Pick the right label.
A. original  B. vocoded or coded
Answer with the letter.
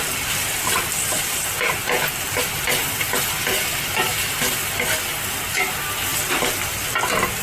A